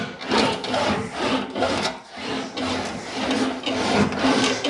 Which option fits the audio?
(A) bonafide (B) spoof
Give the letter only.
A